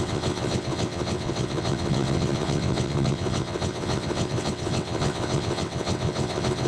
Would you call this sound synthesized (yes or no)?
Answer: yes